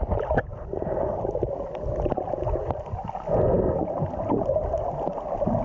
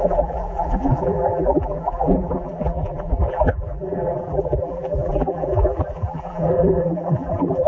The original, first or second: first